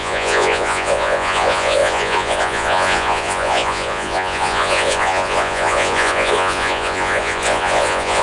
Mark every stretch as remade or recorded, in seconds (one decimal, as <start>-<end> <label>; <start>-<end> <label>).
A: 0.0-8.2 remade